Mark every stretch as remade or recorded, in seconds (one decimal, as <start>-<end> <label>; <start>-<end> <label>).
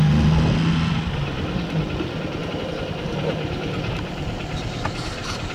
0.0-5.5 recorded